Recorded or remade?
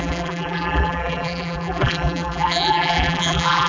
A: remade